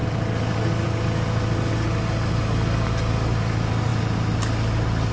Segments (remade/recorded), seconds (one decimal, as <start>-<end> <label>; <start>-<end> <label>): 0.0-5.1 recorded